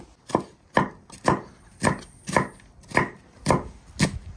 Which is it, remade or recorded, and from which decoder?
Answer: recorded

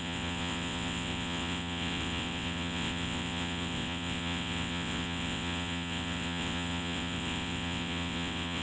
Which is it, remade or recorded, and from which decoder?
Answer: remade, vocoder, WaveNeXt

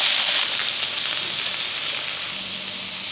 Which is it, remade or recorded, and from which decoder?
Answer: recorded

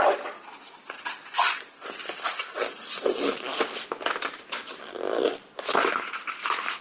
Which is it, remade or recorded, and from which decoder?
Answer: recorded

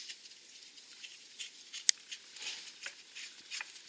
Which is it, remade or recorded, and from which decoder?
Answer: recorded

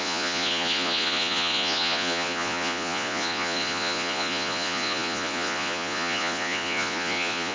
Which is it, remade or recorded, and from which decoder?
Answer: remade, vocoder, Vocos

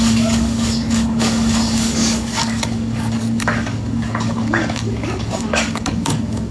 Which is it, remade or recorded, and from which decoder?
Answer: remade, codec, DAC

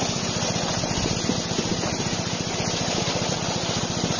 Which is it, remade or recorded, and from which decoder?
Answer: recorded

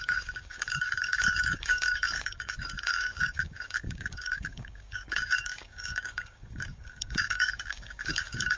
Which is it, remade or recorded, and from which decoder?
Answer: remade, codec, DAC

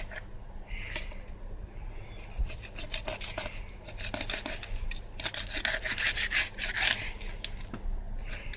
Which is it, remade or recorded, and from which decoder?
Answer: recorded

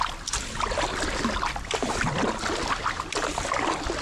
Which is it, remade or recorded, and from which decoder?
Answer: recorded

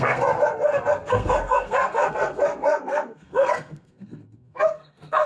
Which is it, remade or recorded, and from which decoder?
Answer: remade, codec, SNAC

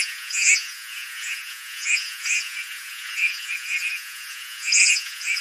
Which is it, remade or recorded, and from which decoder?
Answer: remade, vocoder, Vocos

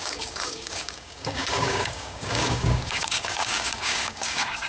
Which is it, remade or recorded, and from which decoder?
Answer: remade, codec, DAC